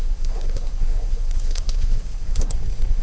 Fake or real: fake